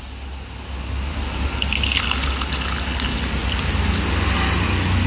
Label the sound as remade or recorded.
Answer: recorded